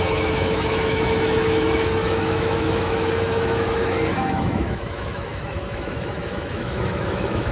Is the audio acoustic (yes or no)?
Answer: no